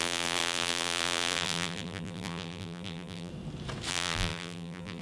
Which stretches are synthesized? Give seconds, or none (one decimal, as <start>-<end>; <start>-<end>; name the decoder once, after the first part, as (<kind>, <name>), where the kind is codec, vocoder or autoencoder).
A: 0.0-3.3 (vocoder, BigVGAN v2); 3.9-5.0

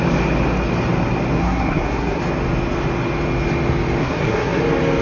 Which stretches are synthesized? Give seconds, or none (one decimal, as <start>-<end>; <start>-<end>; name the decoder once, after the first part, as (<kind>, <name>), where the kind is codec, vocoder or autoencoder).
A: 1.4-2.2 (codec, SNAC); 4.0-4.6